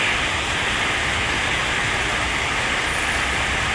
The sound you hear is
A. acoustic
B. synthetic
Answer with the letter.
A